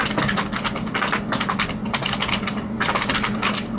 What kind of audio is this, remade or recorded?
recorded